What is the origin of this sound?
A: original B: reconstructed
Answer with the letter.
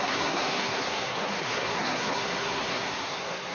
B